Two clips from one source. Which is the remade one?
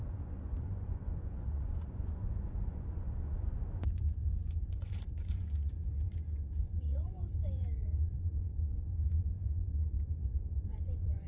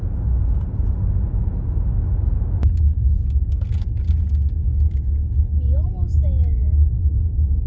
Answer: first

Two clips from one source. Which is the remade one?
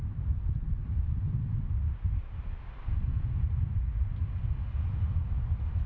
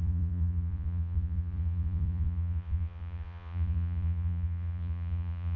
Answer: second